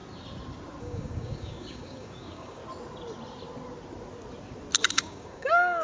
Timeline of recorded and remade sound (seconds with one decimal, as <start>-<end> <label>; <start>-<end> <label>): 0.0-0.8 recorded; 0.8-2.6 remade; 2.6-4.9 recorded; 4.9-5.8 remade